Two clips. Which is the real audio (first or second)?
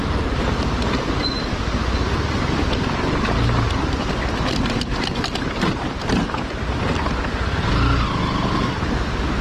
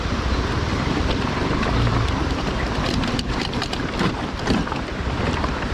first